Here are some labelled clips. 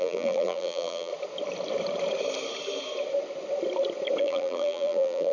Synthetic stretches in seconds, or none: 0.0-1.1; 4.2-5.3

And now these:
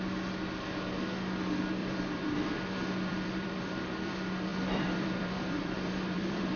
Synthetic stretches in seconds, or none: 1.8-2.6; 3.1-4.1; 4.5-6.6